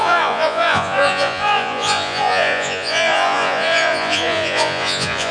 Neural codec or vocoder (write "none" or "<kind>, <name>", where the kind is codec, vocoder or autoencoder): vocoder, Vocos